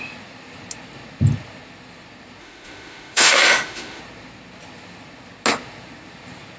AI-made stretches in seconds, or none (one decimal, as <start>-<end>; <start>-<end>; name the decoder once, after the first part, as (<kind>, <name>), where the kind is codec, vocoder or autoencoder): 2.4-4.0 (autoencoder, DAC-VAE)